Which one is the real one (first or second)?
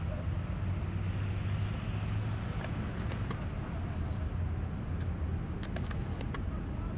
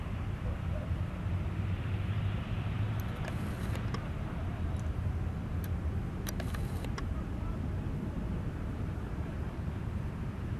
first